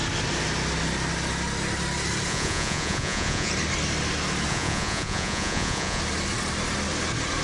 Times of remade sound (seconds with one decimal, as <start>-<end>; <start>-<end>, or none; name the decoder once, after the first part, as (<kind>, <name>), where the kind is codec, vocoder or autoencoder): 2.3-3.5 (vocoder, Vocos); 4.5-6.0